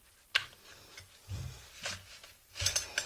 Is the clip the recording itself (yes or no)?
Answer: yes